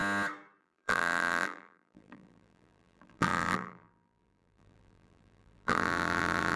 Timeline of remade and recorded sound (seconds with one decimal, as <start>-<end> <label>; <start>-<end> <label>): 0.0-0.6 recorded; 0.6-6.6 remade